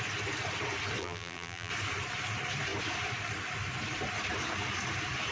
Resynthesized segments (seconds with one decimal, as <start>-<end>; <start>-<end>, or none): 1.0-1.7